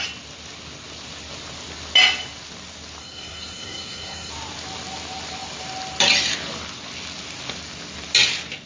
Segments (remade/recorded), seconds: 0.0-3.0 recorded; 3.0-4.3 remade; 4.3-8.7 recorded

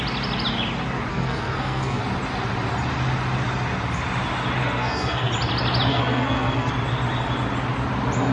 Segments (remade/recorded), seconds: 0.0-1.1 recorded; 1.1-2.0 remade; 2.0-4.6 recorded; 4.6-5.3 remade; 5.3-5.9 recorded; 5.9-6.7 remade; 6.7-8.3 recorded

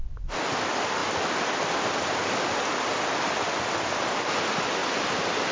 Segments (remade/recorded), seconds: 0.0-5.5 recorded

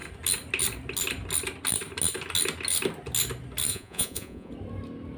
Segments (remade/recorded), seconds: 0.0-3.7 recorded; 3.7-4.5 remade; 4.5-5.2 recorded

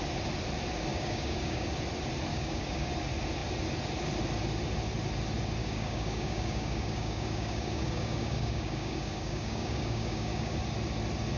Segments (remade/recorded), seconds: 0.0-0.9 recorded; 0.9-1.7 remade; 1.7-2.3 recorded; 2.3-2.9 remade; 2.9-5.6 recorded; 5.6-10.6 remade; 10.6-11.4 recorded